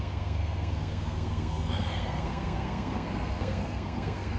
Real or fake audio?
fake